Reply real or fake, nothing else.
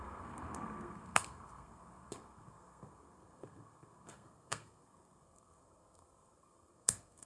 fake